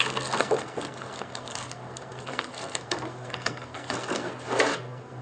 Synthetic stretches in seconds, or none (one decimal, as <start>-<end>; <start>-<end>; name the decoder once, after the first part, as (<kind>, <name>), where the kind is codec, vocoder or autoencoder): 0.0-5.2 (codec, SNAC)